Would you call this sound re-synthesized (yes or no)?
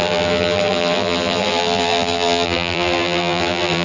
yes